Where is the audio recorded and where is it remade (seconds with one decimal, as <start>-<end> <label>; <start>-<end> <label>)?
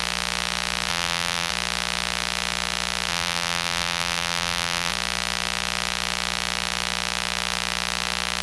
0.0-0.9 recorded; 0.9-1.5 remade; 1.5-3.1 recorded; 3.1-4.9 remade; 4.9-8.4 recorded